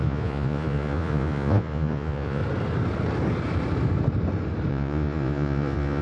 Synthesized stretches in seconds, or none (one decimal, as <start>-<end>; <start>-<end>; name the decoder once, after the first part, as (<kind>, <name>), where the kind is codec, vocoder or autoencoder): 0.0-2.4 (vocoder, Vocos); 4.7-6.0